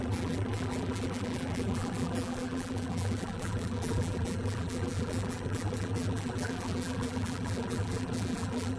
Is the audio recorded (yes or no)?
no